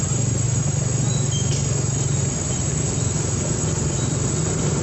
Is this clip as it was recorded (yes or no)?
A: yes